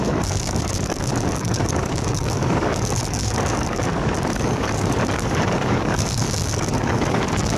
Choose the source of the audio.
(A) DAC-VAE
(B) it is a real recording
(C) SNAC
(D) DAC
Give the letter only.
D